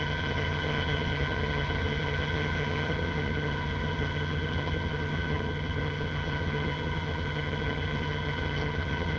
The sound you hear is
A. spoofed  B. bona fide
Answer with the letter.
A